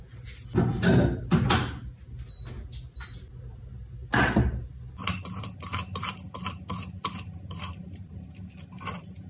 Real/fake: real